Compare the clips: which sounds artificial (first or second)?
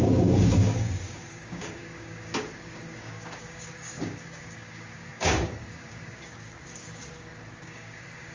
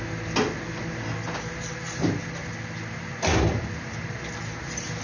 first